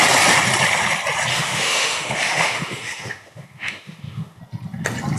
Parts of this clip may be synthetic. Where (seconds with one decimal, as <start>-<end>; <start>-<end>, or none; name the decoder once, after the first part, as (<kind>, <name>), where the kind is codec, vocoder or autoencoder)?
1.3-4.4 (autoencoder, DAC-VAE)